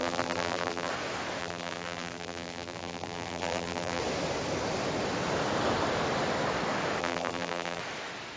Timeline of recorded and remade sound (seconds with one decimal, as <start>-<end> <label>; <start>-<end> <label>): 0.0-0.9 remade; 0.9-1.4 recorded; 1.4-4.0 remade; 4.0-7.0 recorded; 7.0-7.8 remade; 7.8-8.4 recorded